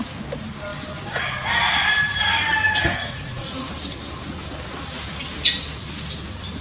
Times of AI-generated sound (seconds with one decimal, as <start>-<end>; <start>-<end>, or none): 3.0-3.7